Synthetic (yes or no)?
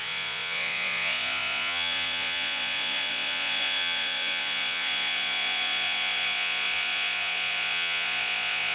yes